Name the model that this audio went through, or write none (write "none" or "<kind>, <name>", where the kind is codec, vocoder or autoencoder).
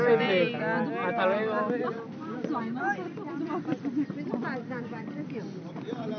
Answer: none